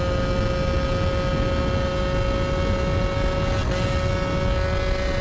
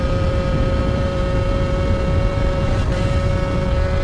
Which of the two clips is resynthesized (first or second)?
second